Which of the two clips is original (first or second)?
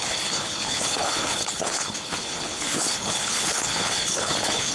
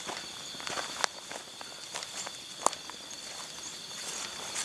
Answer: second